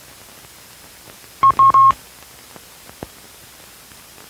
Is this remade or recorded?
recorded